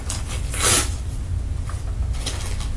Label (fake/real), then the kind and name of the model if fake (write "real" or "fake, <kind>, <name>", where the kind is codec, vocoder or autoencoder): real